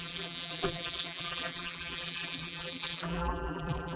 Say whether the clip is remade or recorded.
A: remade